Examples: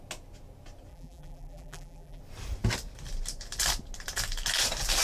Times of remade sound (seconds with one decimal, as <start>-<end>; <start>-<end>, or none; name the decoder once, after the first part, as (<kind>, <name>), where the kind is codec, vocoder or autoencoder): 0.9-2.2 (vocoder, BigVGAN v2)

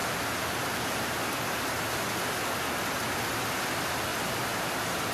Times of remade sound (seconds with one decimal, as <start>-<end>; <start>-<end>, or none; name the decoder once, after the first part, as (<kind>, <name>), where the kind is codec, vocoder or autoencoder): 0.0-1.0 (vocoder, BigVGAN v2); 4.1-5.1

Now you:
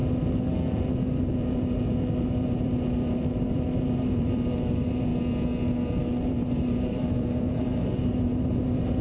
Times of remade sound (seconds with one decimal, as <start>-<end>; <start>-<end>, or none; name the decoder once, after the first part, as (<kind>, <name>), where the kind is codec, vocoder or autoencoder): 1.3-5.1 (vocoder, BigVGAN v2); 6.0-9.0

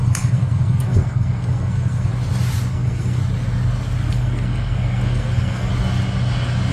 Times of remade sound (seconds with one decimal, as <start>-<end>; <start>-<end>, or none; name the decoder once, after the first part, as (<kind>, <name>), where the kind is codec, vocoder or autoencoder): 0.0-2.1 (codec, SNAC); 2.7-3.2; 4.1-5.7

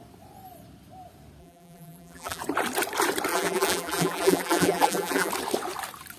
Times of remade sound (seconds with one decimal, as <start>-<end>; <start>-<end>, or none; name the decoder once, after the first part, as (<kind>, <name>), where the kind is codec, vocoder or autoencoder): 1.4-2.4 (vocoder, BigVGAN v2); 3.3-5.3